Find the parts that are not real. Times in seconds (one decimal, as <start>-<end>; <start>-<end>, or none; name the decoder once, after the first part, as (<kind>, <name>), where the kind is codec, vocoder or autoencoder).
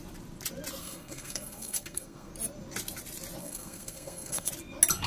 0.8-2.3 (codec, SNAC); 3.4-4.5